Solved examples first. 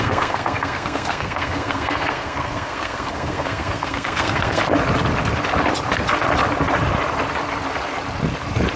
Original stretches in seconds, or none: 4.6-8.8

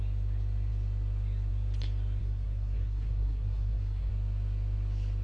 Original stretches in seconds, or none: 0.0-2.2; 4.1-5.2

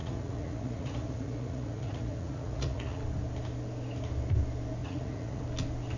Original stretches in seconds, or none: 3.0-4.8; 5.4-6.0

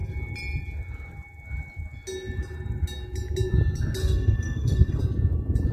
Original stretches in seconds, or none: 0.0-4.0; 5.0-5.7

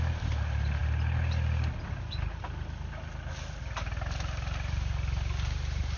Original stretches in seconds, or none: 0.0-6.0

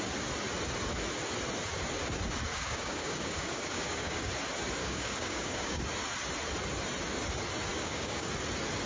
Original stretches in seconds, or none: 0.0-2.5; 4.3-4.8; 5.8-7.7; 8.3-8.9

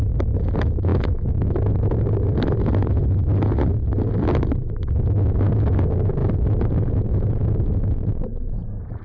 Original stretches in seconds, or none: 0.0-9.0

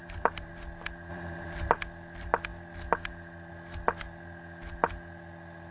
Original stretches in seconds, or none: 0.5-1.1; 1.7-5.7